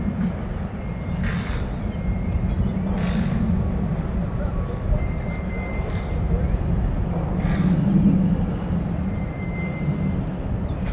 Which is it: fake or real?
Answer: real